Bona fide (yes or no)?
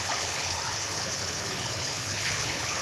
no